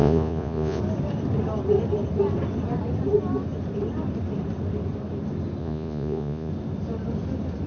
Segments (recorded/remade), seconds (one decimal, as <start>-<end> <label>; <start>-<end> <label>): 0.0-0.8 remade; 0.8-5.6 recorded; 5.6-6.5 remade; 6.5-7.7 recorded